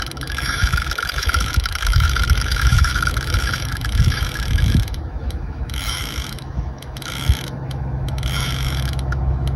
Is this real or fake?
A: fake